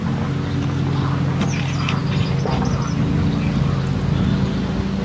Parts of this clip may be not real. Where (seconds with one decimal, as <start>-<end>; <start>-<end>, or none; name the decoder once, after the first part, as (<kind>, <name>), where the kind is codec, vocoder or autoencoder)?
none